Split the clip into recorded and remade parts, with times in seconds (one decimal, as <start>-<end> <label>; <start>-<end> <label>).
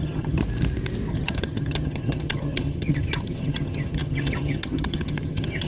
0.0-0.4 remade; 0.4-1.1 recorded; 1.1-5.7 remade